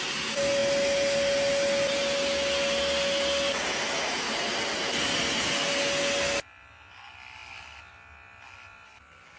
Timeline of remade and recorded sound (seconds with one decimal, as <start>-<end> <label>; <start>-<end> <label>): 0.0-9.4 recorded